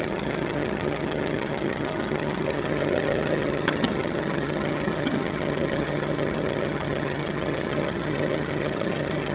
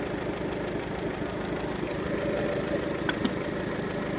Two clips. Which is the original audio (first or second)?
second